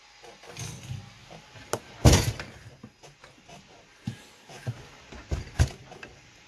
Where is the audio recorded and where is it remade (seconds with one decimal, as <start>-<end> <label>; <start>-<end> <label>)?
0.0-6.5 recorded